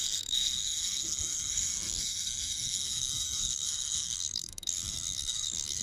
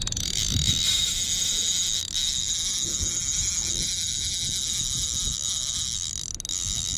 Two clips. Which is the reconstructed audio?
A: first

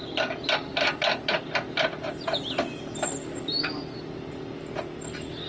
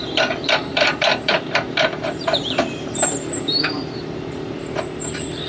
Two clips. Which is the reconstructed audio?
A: second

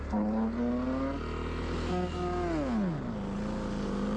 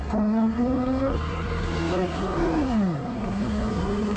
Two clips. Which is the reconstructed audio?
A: second